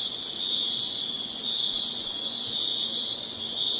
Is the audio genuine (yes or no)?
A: no